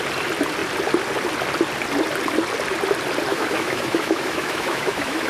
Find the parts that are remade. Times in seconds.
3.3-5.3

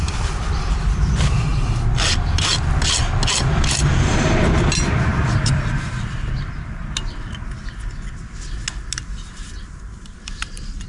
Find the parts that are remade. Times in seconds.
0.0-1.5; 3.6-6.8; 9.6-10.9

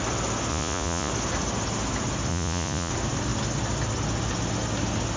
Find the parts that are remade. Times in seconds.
0.5-1.1; 2.3-2.9